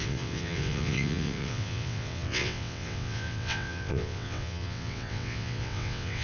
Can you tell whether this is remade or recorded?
remade